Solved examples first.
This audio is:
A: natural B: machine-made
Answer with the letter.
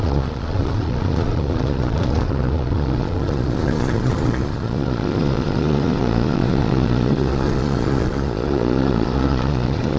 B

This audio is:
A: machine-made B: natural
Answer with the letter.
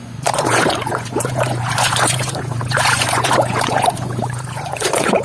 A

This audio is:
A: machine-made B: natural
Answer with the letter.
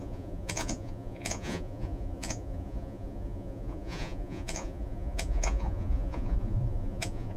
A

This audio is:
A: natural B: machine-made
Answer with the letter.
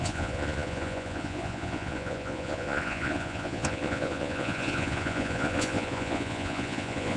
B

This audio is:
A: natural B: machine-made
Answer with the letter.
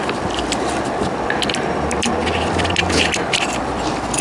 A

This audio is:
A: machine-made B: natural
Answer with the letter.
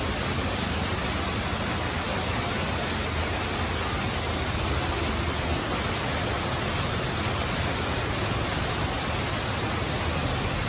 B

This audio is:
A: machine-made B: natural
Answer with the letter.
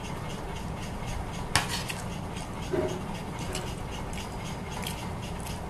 B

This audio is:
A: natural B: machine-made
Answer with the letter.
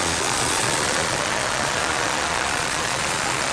B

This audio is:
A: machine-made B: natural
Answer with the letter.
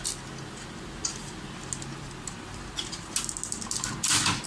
B